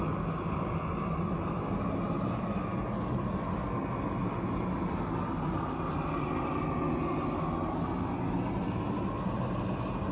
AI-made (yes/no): no